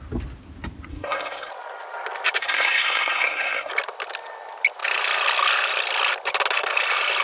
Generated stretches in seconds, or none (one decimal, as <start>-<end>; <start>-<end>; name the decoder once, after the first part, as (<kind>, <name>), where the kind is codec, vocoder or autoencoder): 0.9-1.5 (codec, SNAC); 2.4-3.7